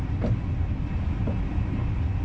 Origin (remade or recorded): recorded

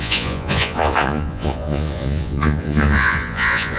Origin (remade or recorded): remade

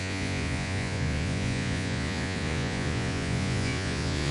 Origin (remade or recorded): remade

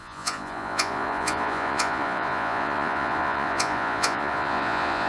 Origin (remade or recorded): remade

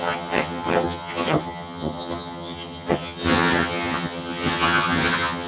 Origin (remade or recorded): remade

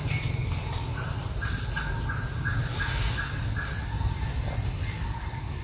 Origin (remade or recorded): recorded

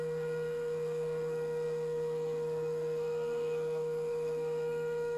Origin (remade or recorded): remade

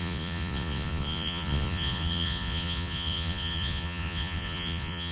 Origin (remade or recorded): remade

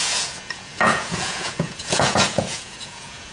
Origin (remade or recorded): remade